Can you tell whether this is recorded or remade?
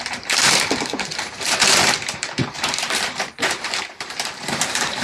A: remade